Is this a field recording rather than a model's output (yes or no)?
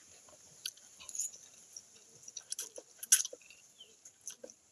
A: yes